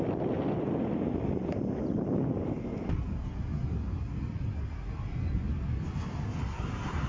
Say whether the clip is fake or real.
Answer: real